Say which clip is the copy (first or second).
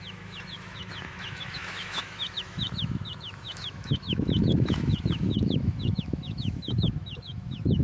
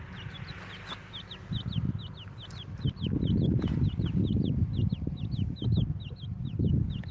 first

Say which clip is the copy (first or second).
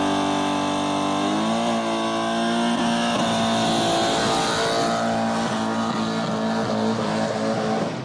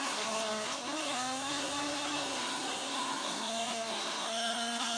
second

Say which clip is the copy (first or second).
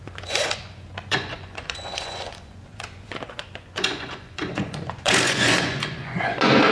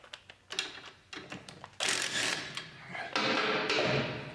first